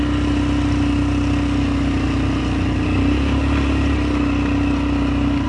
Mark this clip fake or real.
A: real